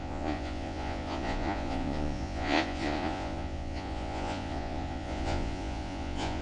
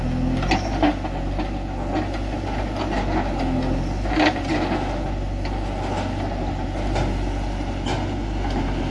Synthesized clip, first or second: first